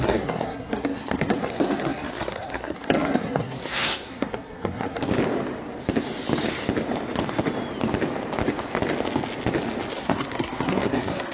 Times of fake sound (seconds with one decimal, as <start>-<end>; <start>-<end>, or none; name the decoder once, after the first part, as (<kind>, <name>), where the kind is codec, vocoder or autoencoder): 0.0-5.1 (codec, SNAC); 9.9-11.3